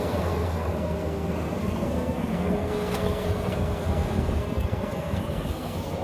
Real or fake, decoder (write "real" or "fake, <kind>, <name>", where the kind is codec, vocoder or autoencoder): fake, codec, SNAC